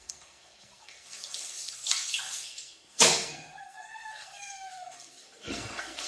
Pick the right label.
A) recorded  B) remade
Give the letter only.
B